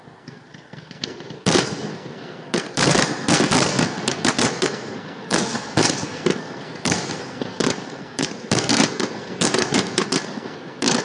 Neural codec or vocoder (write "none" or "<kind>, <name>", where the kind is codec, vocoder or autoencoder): codec, SNAC